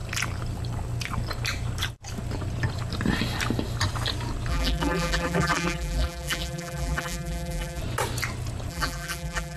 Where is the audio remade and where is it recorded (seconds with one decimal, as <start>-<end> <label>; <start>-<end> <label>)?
0.0-4.5 recorded; 4.5-7.8 remade; 7.8-8.7 recorded; 8.7-9.6 remade